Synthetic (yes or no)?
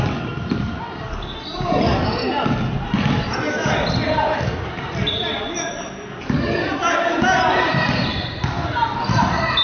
no